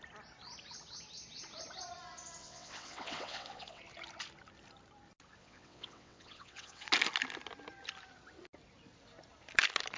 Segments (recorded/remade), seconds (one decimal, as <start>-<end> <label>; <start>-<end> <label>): 0.0-2.4 recorded; 2.4-3.8 remade; 3.8-5.4 recorded; 5.4-6.9 remade; 6.9-10.0 recorded